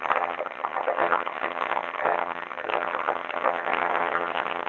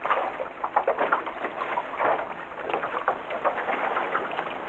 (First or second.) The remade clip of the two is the first